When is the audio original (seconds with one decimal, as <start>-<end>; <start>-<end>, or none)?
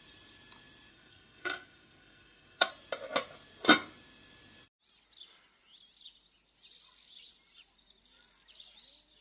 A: 0.0-0.9; 2.7-9.2